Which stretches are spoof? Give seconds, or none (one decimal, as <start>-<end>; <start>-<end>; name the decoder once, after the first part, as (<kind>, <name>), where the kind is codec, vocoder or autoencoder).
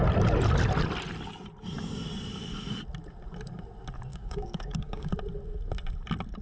4.1-5.1 (codec, DAC)